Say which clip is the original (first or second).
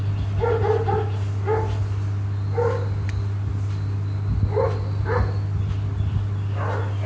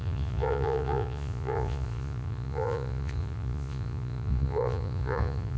first